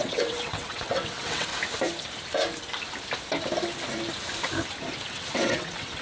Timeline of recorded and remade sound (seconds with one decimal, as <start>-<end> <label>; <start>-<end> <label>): 0.0-1.5 remade; 1.5-5.1 recorded; 5.1-6.0 remade